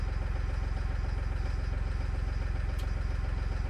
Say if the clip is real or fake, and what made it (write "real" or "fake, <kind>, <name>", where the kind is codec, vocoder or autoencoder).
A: real